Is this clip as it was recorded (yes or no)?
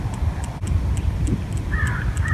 yes